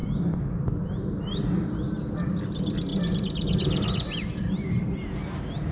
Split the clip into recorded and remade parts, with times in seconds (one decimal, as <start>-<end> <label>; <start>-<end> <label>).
0.0-2.9 recorded; 2.9-5.2 remade; 5.2-5.7 recorded